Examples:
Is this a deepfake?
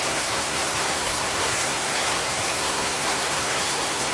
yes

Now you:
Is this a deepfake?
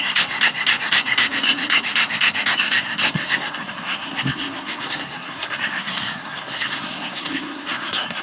yes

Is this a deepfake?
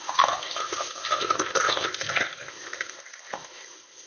yes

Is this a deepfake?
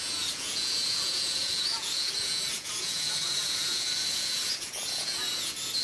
yes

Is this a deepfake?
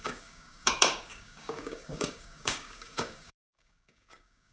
yes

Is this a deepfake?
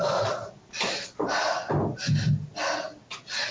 no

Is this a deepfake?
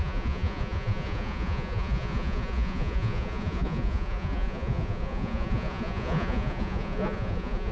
yes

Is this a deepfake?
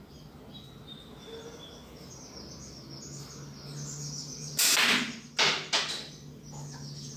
no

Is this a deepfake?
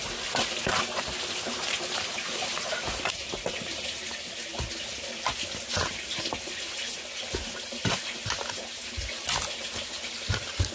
no